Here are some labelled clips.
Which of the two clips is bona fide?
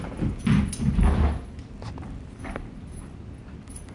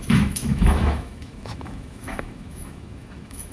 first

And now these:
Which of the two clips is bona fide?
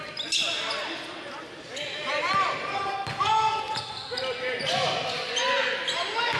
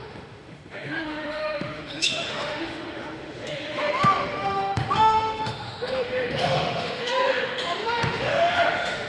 first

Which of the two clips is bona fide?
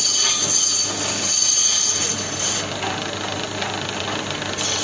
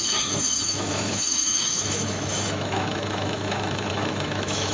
first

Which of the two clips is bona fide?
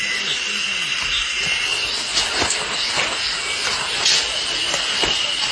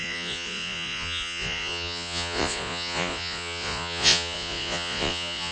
first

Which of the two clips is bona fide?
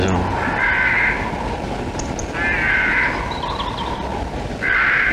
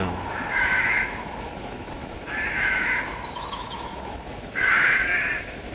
first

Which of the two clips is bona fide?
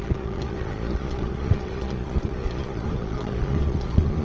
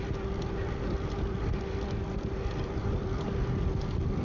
second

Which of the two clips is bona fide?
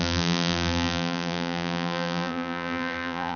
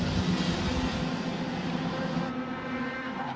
second